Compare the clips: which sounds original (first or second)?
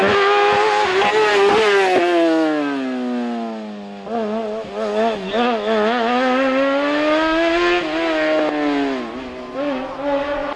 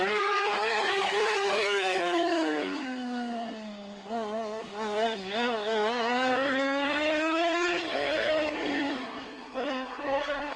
first